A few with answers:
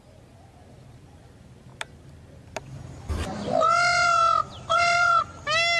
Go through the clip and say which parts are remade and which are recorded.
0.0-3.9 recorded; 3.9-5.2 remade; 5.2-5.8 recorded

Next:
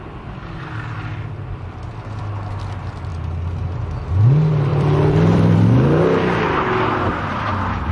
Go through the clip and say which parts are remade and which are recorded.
0.0-4.7 recorded; 4.7-6.0 remade; 6.0-7.9 recorded